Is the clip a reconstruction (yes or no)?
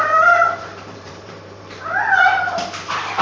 yes